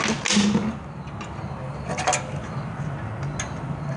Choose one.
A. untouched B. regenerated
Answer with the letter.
A